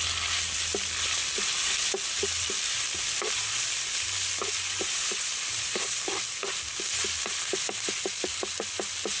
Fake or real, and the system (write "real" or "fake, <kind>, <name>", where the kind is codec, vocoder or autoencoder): real